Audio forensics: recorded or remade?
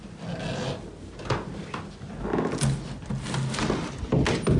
recorded